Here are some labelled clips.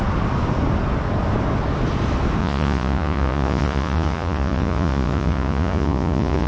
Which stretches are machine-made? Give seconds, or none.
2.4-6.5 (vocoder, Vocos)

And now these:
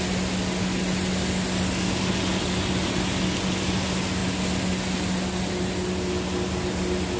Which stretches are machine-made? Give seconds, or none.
none

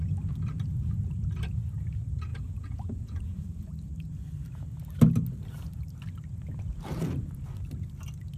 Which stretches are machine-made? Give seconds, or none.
2.3-3.7 (vocoder, Vocos)

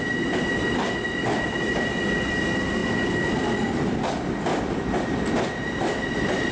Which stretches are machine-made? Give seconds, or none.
none

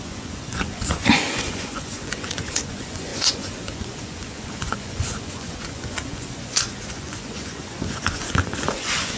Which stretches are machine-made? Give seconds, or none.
0.0-9.2 (vocoder, Vocos)

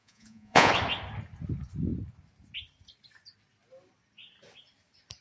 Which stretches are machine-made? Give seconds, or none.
0.0-0.7 (vocoder, Vocos)

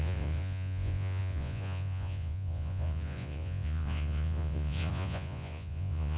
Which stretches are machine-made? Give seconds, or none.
0.0-6.2 (vocoder, Vocos)